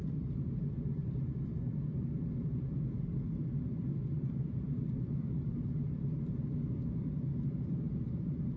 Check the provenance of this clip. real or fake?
fake